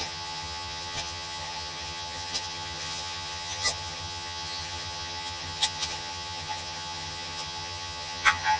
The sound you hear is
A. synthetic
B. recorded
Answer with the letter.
A